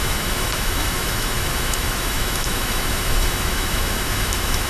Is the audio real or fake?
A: fake